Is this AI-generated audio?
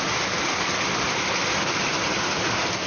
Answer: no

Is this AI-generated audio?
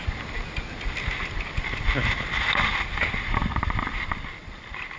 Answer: no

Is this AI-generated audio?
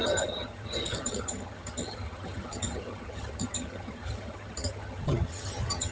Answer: yes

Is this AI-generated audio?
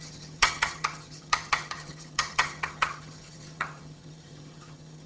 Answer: yes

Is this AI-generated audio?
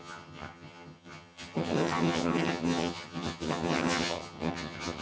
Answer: yes